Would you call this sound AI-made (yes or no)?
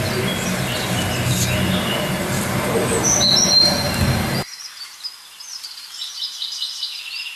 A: no